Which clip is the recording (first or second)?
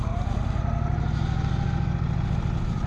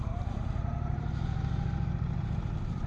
first